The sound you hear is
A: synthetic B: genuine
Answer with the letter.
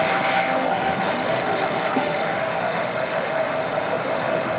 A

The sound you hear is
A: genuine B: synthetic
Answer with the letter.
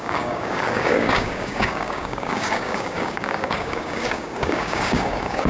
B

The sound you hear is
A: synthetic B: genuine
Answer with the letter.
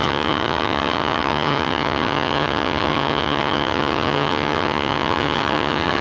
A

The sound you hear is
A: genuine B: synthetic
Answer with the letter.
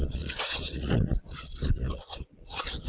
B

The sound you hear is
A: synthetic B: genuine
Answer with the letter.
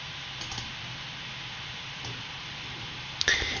B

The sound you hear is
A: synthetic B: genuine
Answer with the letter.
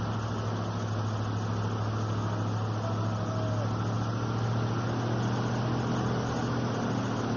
B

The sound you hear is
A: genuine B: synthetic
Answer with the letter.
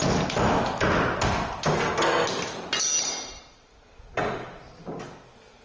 A